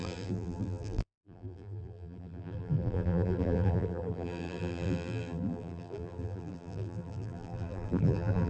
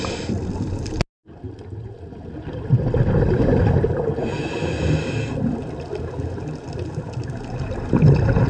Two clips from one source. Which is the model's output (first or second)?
first